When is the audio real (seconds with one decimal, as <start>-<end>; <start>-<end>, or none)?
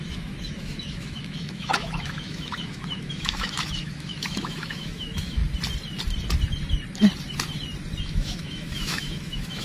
5.4-8.0